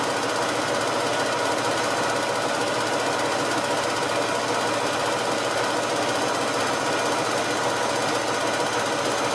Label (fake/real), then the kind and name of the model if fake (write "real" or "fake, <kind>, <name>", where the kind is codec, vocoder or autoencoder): real